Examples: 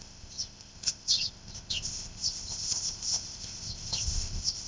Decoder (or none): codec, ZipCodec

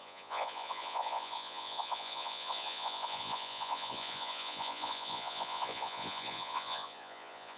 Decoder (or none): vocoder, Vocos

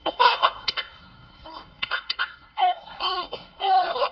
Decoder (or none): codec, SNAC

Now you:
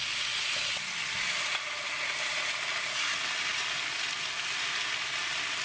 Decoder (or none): none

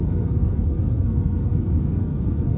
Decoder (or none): codec, SNAC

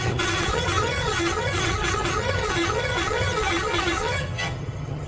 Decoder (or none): vocoder, HiFi-GAN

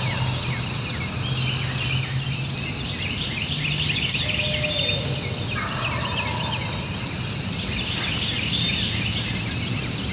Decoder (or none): none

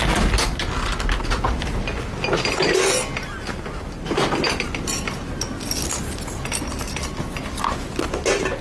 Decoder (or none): none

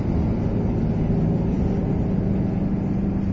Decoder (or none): none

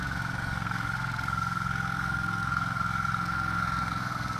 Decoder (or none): codec, SNAC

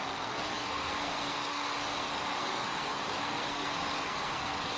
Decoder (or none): codec, SNAC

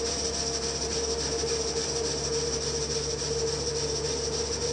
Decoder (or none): none